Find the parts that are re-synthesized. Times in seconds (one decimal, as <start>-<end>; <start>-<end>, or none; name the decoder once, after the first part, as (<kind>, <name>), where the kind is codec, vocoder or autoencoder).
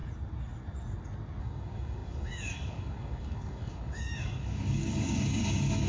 1.4-5.9 (codec, DAC)